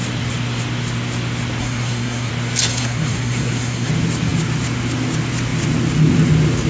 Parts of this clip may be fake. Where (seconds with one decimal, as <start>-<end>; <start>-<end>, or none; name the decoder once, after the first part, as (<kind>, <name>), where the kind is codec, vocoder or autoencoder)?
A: 1.6-2.3 (codec, SNAC); 2.7-3.9